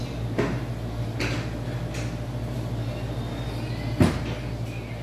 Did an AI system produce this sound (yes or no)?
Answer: no